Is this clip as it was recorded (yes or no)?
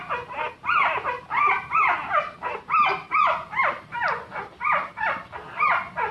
yes